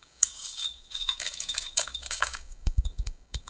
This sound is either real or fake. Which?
fake